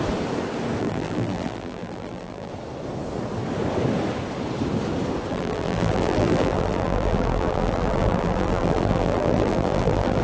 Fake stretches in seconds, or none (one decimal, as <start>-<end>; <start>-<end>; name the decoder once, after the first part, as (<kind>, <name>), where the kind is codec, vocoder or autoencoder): 0.8-2.5 (vocoder, BigVGAN v2); 5.3-10.2